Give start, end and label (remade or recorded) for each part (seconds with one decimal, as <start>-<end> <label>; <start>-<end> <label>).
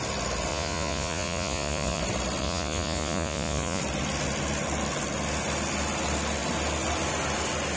0.0-0.5 recorded; 0.5-2.0 remade; 2.0-2.4 recorded; 2.4-3.8 remade; 3.8-7.8 recorded